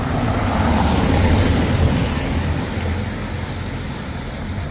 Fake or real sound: real